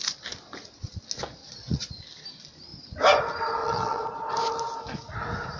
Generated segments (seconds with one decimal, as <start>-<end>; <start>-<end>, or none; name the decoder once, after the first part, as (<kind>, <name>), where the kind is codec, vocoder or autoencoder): 1.4-1.9 (vocoder, Vocos); 3.6-4.3